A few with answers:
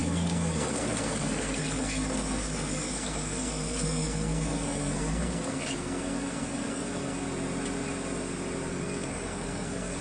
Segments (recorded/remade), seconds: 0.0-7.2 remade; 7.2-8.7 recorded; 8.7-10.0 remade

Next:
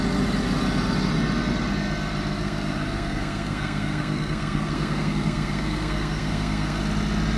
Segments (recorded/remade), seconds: 0.0-2.4 recorded; 2.4-6.8 remade; 6.8-7.4 recorded

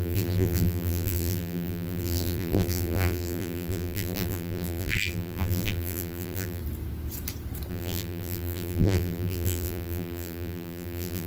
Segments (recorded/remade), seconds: 0.0-6.6 remade; 6.6-7.7 recorded; 7.7-11.3 remade

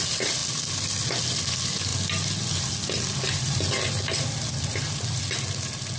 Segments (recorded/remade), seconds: 0.0-6.0 recorded

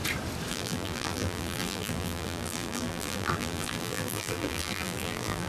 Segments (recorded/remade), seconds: 0.0-0.5 recorded; 0.5-5.5 remade

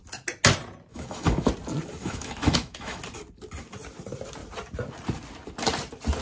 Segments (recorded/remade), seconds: 0.0-0.9 recorded; 0.9-1.5 remade; 1.5-2.0 recorded; 2.0-3.0 remade; 3.0-6.2 recorded